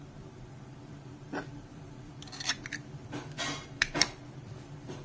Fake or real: fake